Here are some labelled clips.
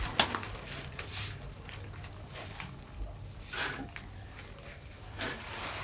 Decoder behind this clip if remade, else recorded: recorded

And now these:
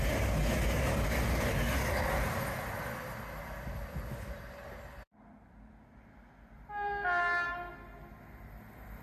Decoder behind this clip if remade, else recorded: recorded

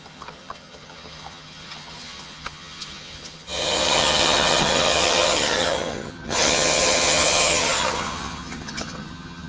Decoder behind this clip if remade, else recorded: remade, vocoder, HiFi-GAN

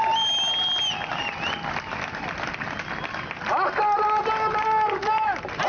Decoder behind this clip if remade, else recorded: recorded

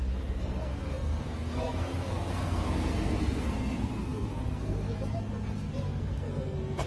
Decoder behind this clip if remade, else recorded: remade, codec, SNAC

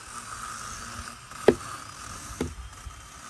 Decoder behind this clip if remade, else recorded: recorded